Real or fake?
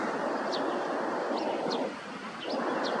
real